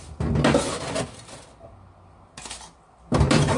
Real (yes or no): yes